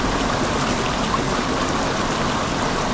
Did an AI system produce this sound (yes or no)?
no